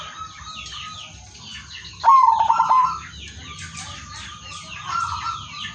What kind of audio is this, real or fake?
real